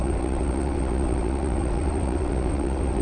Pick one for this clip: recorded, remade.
remade